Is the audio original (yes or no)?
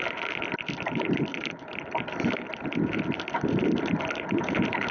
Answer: no